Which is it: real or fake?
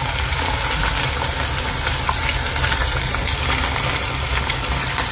real